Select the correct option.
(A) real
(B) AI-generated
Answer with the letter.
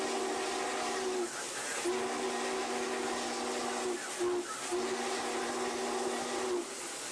A